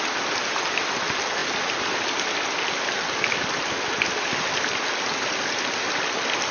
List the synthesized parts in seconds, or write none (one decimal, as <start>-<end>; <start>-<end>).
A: none